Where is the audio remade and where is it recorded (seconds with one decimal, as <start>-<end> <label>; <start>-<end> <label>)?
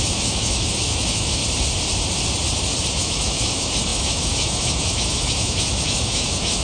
0.0-1.4 remade; 1.4-2.9 recorded; 2.9-6.6 remade